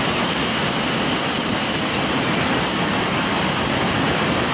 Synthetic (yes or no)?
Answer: no